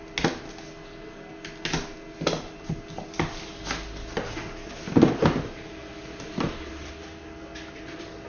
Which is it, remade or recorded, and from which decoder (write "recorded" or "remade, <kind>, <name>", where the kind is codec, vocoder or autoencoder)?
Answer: recorded